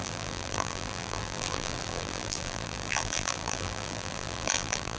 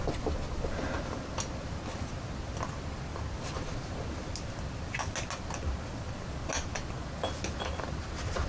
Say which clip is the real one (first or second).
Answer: second